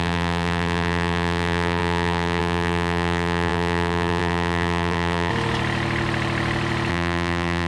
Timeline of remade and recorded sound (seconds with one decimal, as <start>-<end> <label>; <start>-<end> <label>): 0.0-5.3 remade; 5.3-6.9 recorded; 6.9-7.7 remade